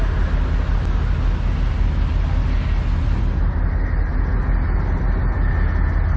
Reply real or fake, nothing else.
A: real